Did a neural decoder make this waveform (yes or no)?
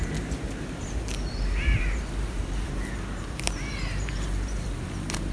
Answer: yes